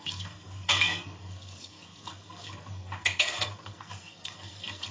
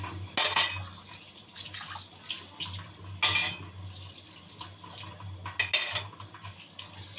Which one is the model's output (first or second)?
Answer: first